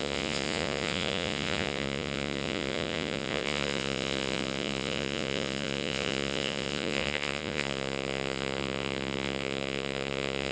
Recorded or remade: remade